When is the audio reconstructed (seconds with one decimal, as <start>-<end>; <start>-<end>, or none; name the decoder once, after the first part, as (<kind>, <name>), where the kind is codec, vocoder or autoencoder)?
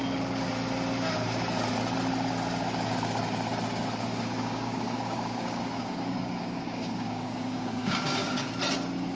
4.1-8.5 (codec, DAC)